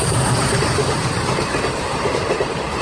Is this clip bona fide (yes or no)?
no